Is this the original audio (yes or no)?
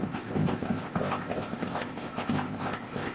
no